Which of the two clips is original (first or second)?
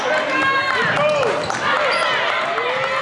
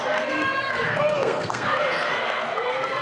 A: first